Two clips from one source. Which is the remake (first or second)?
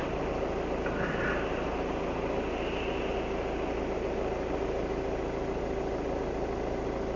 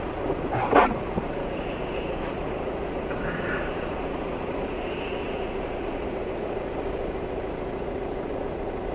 second